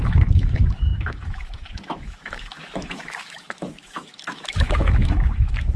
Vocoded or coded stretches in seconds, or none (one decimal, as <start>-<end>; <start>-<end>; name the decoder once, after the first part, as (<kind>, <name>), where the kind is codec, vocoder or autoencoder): 0.0-5.8 (autoencoder, DAC-VAE)